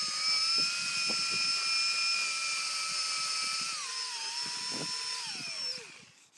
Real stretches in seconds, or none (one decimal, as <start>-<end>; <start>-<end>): 0.0-6.4

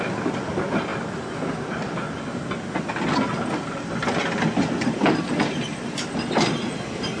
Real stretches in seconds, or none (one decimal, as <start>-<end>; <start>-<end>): 0.0-7.2

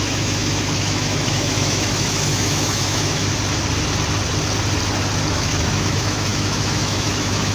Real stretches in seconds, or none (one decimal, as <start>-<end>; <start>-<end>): 3.2-5.3

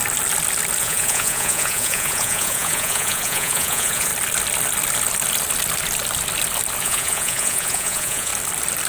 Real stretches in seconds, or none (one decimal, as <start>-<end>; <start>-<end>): 0.0-0.8; 4.1-6.8; 8.3-8.9

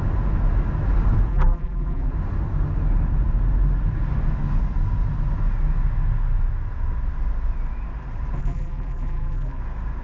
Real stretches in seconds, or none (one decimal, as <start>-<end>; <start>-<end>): 0.0-1.3; 2.1-8.4; 9.6-10.0

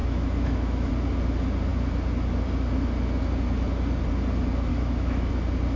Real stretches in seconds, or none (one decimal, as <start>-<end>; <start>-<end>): 0.9-4.7; 5.3-5.8

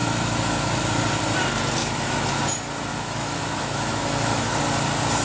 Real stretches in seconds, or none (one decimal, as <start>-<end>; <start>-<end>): 0.8-1.8; 2.4-2.9; 4.6-5.2